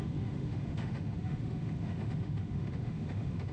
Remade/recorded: remade